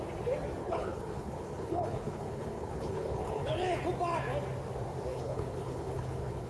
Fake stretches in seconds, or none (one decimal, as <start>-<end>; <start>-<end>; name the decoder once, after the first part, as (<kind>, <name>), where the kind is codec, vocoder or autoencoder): 0.6-3.8 (codec, HILCodec); 5.1-6.5

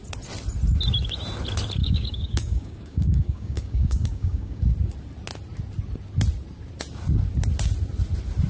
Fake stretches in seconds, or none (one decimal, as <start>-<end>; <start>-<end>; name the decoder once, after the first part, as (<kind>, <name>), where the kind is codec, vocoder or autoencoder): 1.8-4.6 (codec, DAC)